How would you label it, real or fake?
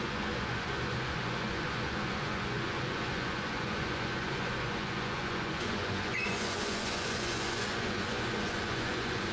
fake